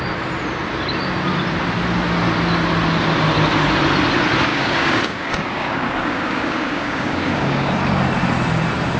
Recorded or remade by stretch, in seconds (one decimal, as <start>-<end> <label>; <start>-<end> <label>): 0.0-4.5 recorded; 4.5-7.7 remade; 7.7-9.0 recorded